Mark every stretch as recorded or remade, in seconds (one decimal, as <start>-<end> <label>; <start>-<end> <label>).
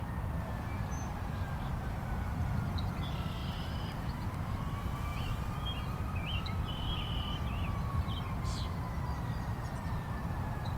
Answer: 0.0-3.4 recorded; 3.4-4.6 remade; 4.6-5.1 recorded; 5.1-8.3 remade; 8.3-10.8 recorded